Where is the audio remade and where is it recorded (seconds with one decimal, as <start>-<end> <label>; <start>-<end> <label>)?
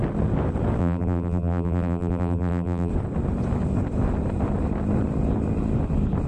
0.0-0.8 recorded; 0.8-2.9 remade; 2.9-6.3 recorded